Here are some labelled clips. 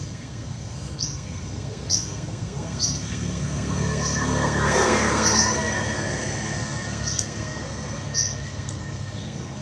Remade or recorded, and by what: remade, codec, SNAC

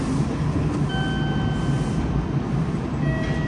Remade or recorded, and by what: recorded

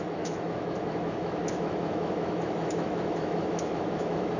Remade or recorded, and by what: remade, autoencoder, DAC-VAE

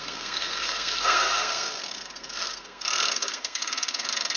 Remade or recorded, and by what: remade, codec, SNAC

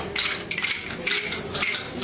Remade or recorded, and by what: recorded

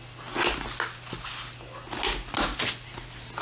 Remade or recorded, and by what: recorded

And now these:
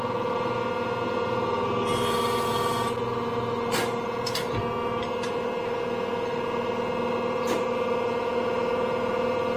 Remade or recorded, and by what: recorded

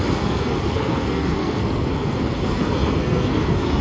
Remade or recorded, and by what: remade, codec, SNAC